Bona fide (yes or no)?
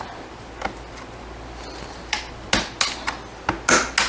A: yes